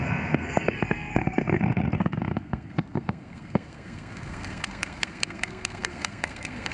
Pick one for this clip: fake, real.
fake